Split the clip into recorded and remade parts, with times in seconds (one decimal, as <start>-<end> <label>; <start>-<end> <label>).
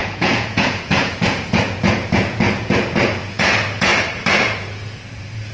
0.0-3.9 remade; 3.9-4.6 recorded; 4.6-5.5 remade